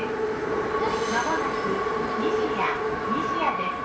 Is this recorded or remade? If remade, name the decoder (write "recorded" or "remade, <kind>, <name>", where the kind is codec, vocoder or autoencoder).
recorded